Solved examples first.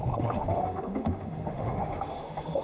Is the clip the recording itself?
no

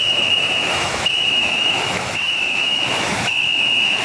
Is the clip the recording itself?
no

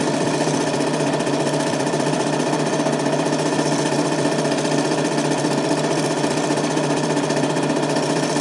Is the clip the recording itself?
no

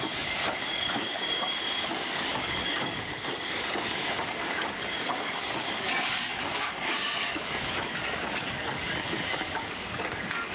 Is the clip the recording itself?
no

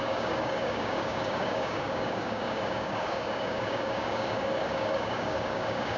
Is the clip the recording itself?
no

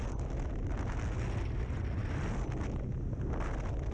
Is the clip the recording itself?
yes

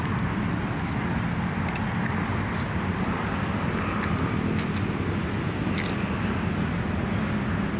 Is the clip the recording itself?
yes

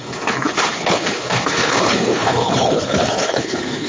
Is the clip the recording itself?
no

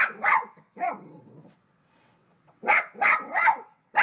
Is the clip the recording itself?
no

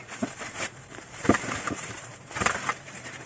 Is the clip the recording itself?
no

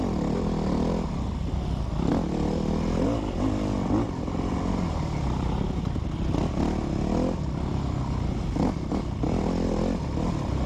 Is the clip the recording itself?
yes